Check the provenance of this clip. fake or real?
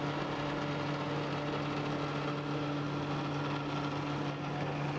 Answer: real